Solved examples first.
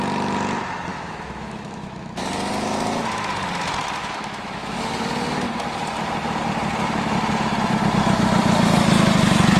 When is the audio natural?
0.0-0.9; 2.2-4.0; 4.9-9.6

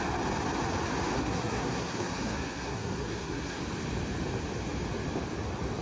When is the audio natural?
0.0-1.2; 3.6-5.8